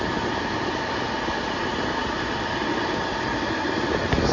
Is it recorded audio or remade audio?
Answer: recorded